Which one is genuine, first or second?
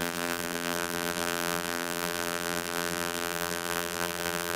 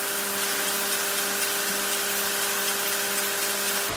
second